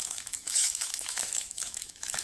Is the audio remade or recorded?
remade